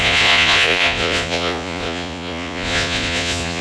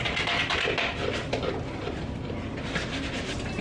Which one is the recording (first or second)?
second